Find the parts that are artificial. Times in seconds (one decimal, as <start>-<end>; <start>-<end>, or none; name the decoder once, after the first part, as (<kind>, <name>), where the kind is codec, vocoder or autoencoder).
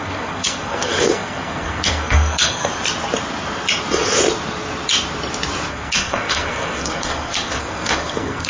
0.0-2.7 (codec, SNAC); 5.7-8.5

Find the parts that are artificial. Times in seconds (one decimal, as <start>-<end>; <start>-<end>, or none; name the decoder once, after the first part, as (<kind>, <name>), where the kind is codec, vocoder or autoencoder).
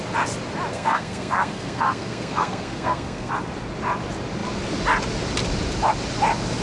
0.7-3.3 (codec, SNAC)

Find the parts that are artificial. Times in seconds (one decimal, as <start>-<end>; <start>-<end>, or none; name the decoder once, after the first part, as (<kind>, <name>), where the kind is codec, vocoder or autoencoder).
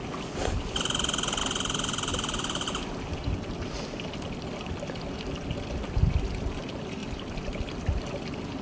none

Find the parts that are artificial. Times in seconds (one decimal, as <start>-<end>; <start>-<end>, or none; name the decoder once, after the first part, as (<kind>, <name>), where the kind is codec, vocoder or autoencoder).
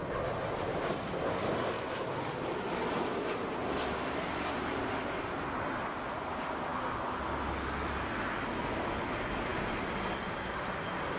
none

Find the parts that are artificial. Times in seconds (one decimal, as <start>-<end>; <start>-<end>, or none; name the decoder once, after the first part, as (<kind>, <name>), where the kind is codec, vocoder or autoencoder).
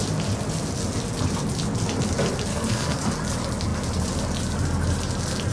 2.5-3.1 (codec, SNAC)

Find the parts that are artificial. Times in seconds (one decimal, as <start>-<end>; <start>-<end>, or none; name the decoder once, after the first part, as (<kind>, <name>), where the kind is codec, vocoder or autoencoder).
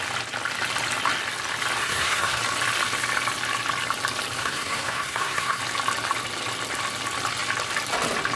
1.8-2.4 (codec, SNAC); 4.4-5.6